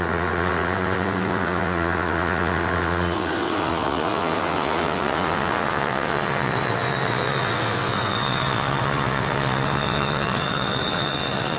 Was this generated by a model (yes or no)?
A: yes